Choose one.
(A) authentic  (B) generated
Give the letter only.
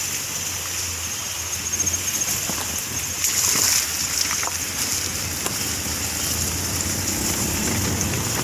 A